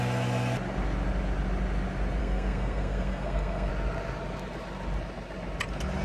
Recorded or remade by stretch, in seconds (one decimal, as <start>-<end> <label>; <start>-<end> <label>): 0.0-2.2 recorded; 2.2-3.7 remade; 3.7-6.0 recorded